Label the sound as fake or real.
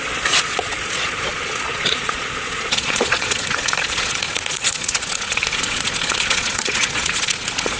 fake